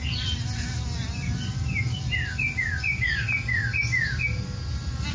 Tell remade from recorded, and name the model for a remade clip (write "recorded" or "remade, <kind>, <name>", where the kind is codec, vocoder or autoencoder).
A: recorded